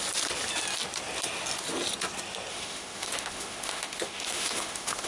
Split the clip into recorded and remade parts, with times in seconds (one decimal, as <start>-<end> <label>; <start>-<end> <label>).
0.0-2.5 recorded; 2.5-5.1 remade